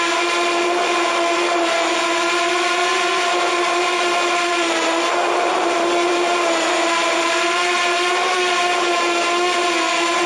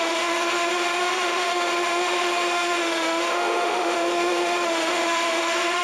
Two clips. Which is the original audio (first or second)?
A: first